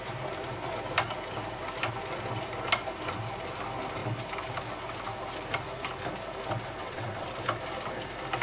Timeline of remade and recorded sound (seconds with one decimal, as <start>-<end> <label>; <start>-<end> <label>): 0.0-6.8 recorded; 6.8-7.3 remade; 7.3-8.4 recorded